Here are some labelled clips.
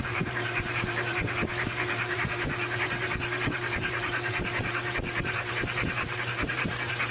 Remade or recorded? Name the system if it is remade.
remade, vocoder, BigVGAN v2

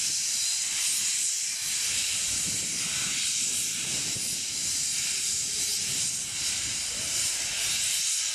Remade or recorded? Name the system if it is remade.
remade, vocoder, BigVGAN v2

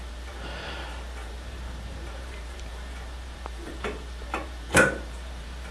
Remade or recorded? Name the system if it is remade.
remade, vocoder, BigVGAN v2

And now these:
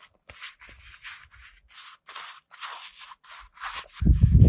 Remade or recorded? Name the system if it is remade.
recorded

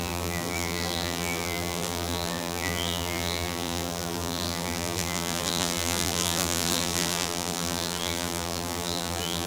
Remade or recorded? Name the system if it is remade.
remade, vocoder, BigVGAN v2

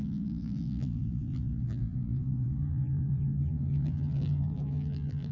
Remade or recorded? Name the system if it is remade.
remade, vocoder, BigVGAN v2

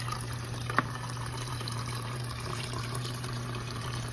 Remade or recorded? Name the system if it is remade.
remade, vocoder, BigVGAN v2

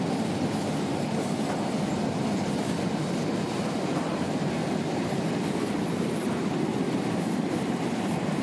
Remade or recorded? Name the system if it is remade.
recorded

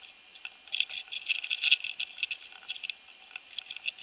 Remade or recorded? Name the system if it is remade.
recorded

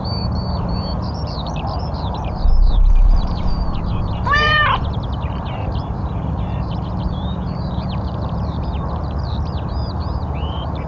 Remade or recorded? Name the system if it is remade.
remade, vocoder, BigVGAN v2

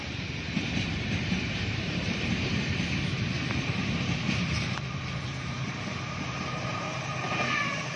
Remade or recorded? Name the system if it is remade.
remade, vocoder, BigVGAN v2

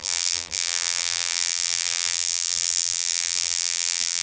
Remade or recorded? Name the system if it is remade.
remade, vocoder, BigVGAN v2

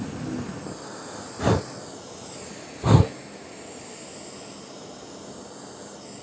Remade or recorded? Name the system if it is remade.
recorded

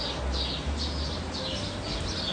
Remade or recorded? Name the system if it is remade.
recorded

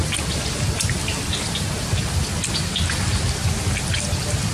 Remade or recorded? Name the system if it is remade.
recorded